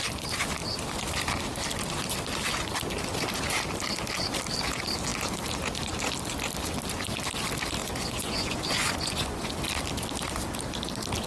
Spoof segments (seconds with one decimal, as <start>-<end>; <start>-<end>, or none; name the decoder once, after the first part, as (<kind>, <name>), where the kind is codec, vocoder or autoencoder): 7.8-9.5 (vocoder, Vocos)